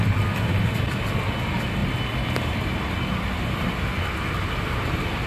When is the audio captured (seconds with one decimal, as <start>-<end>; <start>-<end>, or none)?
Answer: 0.0-5.3